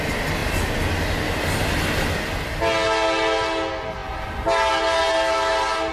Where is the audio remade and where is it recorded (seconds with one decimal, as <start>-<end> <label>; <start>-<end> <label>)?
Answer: 0.0-5.9 recorded